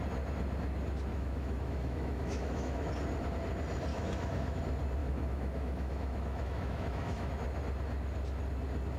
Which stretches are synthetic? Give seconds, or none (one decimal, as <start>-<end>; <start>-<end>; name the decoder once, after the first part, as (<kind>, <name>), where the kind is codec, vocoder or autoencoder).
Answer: 1.1-2.9 (autoencoder, DAC-VAE); 3.9-4.6; 5.0-7.3